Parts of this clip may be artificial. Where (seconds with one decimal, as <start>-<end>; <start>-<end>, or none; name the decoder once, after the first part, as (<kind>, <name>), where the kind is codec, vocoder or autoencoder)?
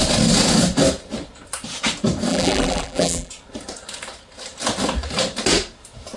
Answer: 2.3-3.3 (vocoder, BigVGAN v2)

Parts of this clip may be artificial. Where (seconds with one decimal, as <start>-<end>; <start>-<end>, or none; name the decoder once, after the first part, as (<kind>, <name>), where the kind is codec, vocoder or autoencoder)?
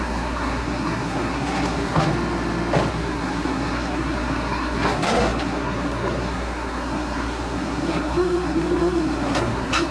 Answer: 0.0-2.1 (codec, SNAC); 2.9-9.9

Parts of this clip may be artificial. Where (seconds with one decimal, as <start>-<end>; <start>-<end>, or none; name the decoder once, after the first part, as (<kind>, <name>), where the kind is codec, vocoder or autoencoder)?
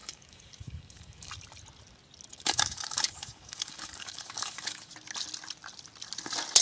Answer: 0.0-1.3 (codec, DAC); 2.3-4.9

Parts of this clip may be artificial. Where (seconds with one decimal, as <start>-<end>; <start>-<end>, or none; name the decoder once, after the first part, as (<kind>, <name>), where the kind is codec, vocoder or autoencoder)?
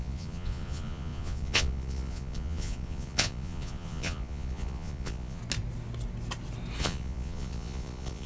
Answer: 0.0-5.4 (vocoder, Vocos); 6.8-8.3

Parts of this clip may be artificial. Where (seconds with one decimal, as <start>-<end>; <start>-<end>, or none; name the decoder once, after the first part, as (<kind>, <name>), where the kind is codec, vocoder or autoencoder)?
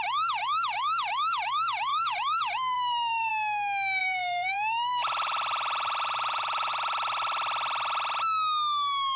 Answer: 1.9-3.3 (vocoder, BigVGAN v2); 4.0-6.7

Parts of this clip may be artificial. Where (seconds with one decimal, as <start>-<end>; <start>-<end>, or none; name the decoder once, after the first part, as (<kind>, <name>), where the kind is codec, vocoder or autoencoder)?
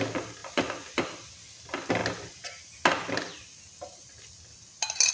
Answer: none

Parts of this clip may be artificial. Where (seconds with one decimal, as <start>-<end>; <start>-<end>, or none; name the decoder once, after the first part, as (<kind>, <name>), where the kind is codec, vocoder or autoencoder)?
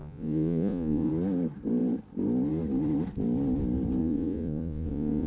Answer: 0.0-1.1 (vocoder, Vocos); 4.0-5.3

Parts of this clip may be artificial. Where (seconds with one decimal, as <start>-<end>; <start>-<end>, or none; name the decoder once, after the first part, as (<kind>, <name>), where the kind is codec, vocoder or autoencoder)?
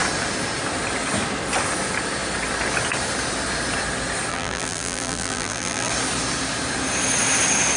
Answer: 4.3-5.9 (vocoder, BigVGAN v2)